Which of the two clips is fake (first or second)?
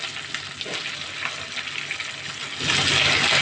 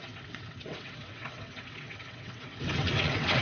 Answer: second